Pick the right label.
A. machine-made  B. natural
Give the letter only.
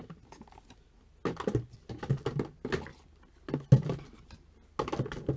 B